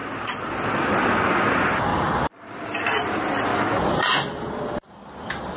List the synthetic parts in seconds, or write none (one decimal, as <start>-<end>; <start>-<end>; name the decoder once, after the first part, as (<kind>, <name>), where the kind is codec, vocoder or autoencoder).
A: 0.0-0.5 (vocoder, BigVGAN v2); 1.9-2.5; 3.5-4.5